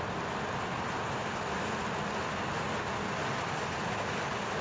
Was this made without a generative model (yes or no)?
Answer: yes